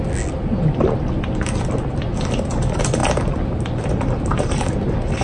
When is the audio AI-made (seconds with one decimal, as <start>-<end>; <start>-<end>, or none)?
none